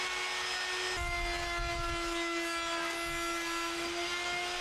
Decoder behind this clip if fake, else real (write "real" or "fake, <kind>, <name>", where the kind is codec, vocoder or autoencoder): real